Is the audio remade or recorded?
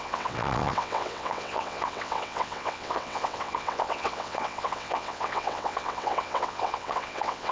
remade